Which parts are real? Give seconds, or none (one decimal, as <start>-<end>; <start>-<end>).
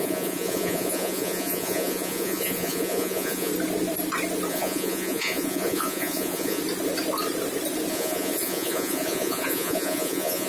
3.5-4.5; 6.6-7.9